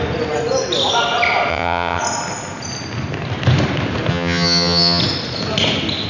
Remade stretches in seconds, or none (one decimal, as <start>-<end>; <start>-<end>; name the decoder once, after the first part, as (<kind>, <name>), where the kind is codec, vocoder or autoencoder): 1.5-2.0 (vocoder, HiFi-GAN); 4.1-5.0